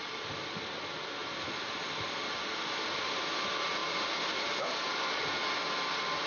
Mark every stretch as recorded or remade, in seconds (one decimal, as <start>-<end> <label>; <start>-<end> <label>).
0.0-6.3 recorded